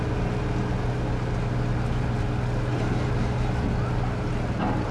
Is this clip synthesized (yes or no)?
no